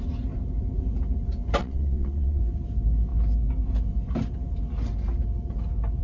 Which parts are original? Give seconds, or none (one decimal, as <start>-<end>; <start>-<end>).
0.0-1.6; 2.4-6.0

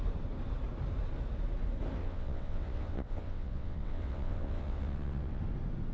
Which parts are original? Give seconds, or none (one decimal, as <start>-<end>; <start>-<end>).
0.0-2.0; 5.4-5.9

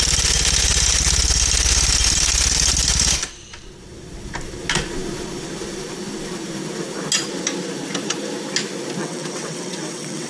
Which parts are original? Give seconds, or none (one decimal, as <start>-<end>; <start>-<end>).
0.0-9.0

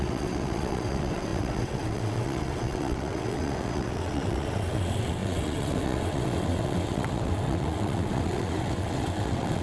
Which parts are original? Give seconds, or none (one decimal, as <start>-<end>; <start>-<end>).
none

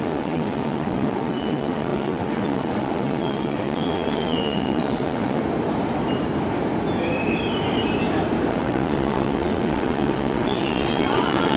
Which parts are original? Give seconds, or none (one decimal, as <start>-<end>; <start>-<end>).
5.4-8.5